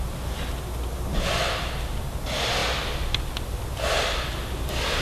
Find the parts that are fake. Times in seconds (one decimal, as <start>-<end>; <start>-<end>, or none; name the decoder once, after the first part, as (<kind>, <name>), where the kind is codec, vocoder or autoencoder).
none

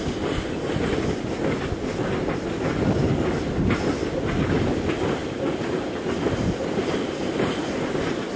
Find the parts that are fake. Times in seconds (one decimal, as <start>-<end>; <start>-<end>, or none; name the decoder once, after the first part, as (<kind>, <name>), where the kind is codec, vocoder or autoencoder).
none

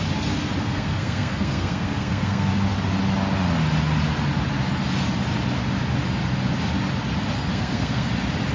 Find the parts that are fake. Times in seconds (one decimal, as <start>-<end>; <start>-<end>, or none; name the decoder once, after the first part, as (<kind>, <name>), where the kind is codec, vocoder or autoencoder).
0.7-2.5 (codec, SNAC); 7.5-8.1

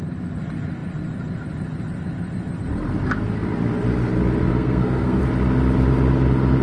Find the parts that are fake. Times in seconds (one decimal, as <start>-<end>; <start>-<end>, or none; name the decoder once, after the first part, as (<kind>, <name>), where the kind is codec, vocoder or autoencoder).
4.5-5.2 (codec, SNAC)

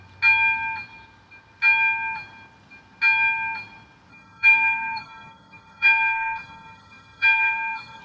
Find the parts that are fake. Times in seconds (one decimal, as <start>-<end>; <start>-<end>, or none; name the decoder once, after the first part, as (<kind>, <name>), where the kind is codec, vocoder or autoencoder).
4.1-8.0 (codec, SNAC)

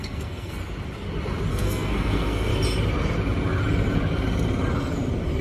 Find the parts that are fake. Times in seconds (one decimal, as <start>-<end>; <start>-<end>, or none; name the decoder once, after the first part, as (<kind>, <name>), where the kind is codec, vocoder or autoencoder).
0.0-0.6 (codec, SNAC); 1.5-2.5